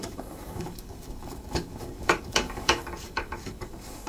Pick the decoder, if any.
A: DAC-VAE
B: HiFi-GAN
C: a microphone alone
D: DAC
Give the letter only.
D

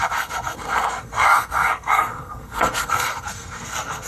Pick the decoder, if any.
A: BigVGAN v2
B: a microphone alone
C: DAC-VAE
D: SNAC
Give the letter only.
D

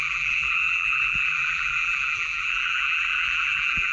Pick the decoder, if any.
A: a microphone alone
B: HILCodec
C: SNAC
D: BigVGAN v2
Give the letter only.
D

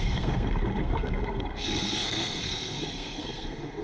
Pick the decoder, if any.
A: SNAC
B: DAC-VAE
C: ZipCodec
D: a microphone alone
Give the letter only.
A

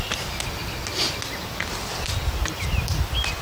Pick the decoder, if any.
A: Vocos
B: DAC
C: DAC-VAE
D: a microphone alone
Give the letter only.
D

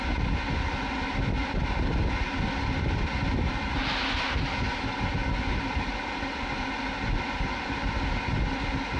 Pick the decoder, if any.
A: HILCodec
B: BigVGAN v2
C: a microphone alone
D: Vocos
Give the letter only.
C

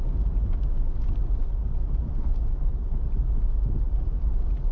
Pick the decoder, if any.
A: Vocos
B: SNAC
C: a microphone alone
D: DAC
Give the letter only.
C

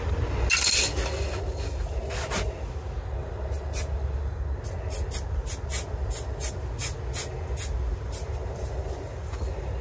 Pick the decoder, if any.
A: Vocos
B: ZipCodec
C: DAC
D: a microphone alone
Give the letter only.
D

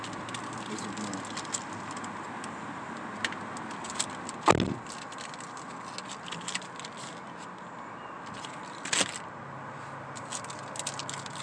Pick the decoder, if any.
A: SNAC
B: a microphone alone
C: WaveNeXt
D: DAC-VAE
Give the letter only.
B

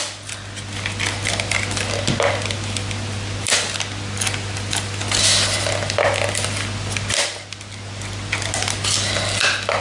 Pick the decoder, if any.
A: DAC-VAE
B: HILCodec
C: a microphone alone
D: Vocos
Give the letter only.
C